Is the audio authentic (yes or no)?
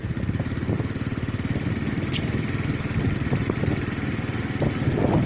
yes